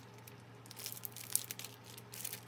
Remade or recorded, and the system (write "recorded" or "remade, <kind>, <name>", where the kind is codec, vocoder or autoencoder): recorded